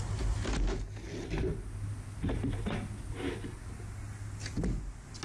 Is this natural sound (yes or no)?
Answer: yes